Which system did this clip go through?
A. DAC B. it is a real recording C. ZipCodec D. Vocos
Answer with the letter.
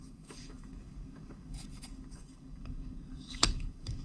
A